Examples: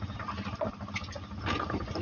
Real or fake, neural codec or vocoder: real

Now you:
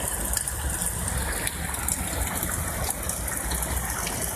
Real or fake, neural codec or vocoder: real